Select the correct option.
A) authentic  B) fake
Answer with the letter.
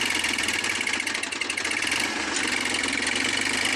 A